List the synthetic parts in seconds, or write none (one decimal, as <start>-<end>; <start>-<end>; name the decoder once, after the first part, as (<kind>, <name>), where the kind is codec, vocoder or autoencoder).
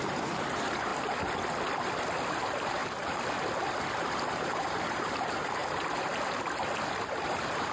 0.0-0.9 (vocoder, BigVGAN v2); 2.3-2.8; 4.3-5.6; 7.3-7.7